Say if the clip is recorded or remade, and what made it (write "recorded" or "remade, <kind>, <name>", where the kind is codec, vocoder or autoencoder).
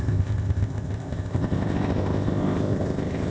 remade, codec, ZipCodec